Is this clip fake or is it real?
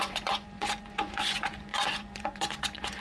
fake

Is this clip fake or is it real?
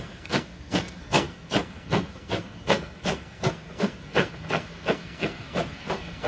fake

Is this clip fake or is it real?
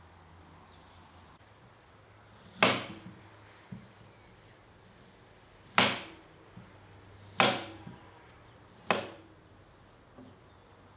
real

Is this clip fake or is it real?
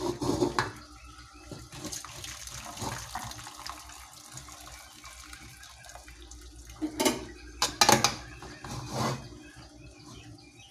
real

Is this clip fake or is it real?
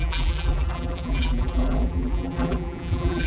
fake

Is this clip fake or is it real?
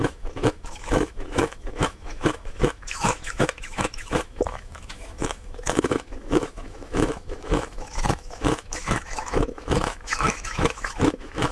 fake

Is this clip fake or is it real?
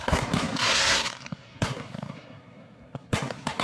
fake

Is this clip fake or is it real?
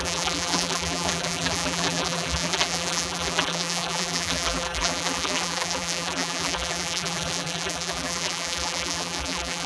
fake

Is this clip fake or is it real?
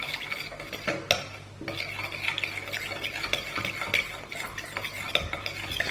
real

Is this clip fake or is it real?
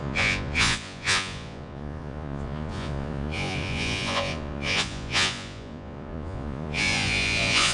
fake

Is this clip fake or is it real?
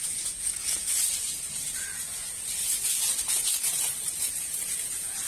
fake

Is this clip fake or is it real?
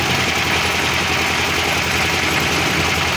real